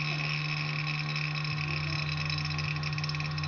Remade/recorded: recorded